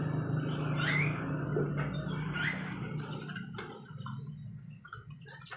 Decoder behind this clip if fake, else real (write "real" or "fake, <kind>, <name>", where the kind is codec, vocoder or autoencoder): real